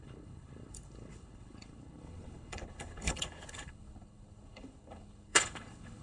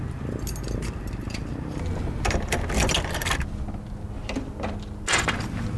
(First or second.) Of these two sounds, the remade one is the first